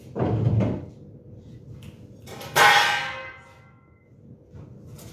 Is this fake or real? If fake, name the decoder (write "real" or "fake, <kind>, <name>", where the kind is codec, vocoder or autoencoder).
real